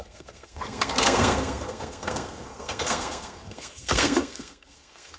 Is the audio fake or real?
fake